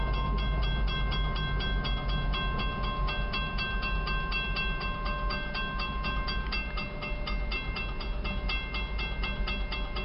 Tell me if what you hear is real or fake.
real